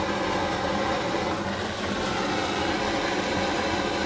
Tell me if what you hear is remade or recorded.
recorded